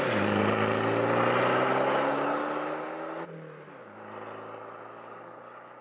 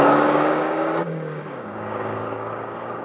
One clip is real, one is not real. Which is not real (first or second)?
second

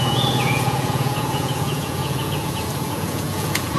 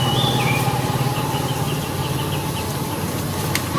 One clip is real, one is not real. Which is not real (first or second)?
first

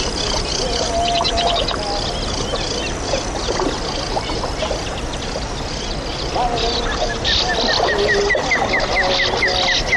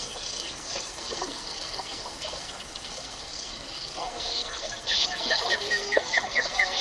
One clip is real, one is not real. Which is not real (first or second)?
second